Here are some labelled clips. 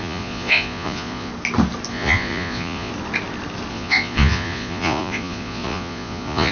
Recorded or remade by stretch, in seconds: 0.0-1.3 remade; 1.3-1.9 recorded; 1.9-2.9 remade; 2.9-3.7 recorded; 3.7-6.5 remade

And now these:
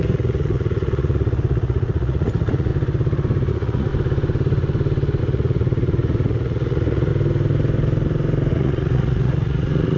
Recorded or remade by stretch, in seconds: 0.0-2.7 remade; 2.7-3.5 recorded; 3.5-3.9 remade; 3.9-5.2 recorded; 5.2-7.1 remade; 7.1-8.5 recorded; 8.5-10.0 remade

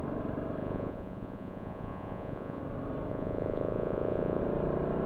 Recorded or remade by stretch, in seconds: 0.0-0.6 recorded; 0.6-2.6 remade; 2.6-3.1 recorded; 3.1-4.4 remade; 4.4-5.1 recorded

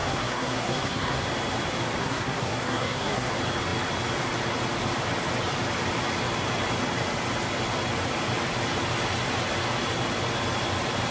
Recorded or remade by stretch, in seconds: 0.0-1.2 remade; 1.2-2.0 recorded; 2.0-3.3 remade; 3.3-11.1 recorded

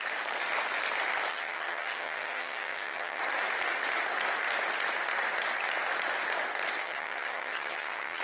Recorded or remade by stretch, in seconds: 0.0-1.3 recorded; 1.3-3.2 remade; 3.2-6.8 recorded; 6.8-8.2 remade

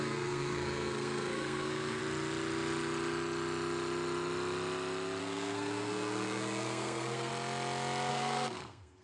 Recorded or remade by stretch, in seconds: 0.0-2.0 remade; 2.0-5.2 recorded; 5.2-7.3 remade; 7.3-8.1 recorded; 8.1-9.0 remade